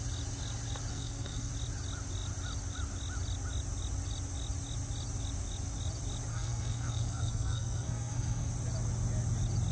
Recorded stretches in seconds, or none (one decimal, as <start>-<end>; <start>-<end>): 0.0-0.9; 1.5-6.3; 8.5-9.7